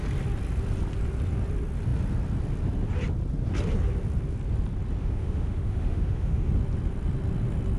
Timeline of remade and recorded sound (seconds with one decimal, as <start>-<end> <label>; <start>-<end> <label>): 0.0-5.0 recorded; 5.0-6.5 remade; 6.5-7.8 recorded